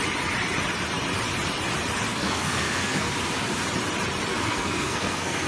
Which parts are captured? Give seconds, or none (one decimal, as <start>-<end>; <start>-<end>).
0.0-2.1; 3.1-4.3